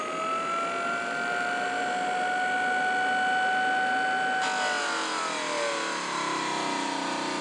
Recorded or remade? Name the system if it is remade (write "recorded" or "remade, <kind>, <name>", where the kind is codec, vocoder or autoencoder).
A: recorded